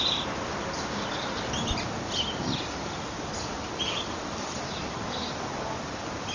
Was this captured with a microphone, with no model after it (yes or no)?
yes